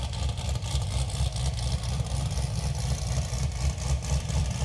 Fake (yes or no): yes